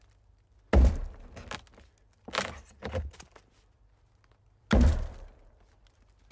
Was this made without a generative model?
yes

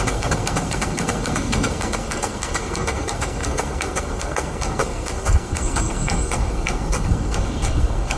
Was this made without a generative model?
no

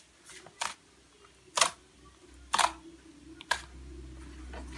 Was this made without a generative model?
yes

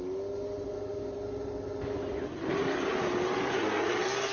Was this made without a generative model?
yes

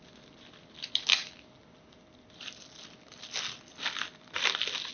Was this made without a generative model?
yes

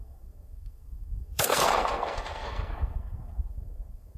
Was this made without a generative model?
no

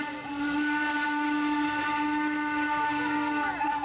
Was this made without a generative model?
yes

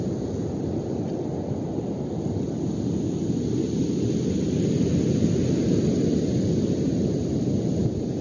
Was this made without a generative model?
yes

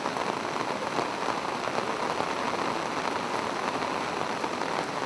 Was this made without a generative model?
yes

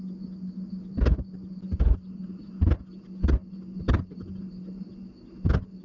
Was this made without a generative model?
yes